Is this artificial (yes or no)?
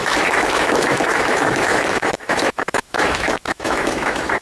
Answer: yes